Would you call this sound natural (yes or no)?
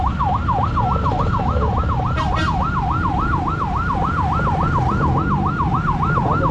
yes